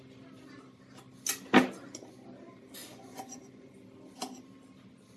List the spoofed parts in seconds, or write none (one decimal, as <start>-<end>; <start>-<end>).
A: 2.8-3.7